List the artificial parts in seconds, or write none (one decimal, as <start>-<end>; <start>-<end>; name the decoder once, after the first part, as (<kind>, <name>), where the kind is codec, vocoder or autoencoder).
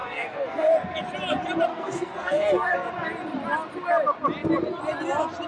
0.0-0.7 (codec, SNAC); 1.7-2.9